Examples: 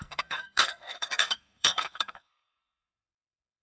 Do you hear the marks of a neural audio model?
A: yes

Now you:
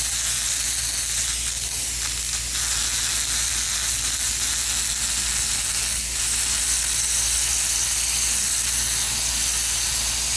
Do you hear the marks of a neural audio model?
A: no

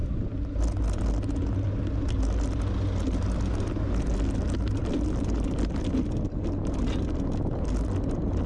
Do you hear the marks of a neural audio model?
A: no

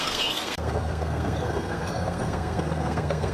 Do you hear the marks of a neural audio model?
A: yes